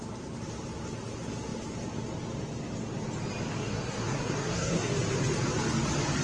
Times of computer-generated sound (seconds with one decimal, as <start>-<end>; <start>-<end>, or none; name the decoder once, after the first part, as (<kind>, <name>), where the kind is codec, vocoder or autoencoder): 3.6-4.9 (codec, SNAC)